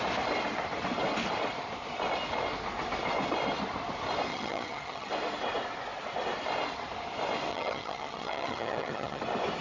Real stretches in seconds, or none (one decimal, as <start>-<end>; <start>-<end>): 0.0-4.3; 5.1-7.5; 9.2-9.6